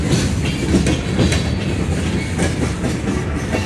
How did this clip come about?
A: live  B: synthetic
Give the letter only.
A